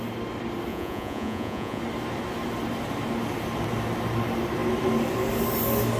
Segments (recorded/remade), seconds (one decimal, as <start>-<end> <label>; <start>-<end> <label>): 0.0-0.7 recorded; 0.7-1.8 remade; 1.8-6.0 recorded